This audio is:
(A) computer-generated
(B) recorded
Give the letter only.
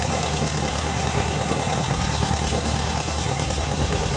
A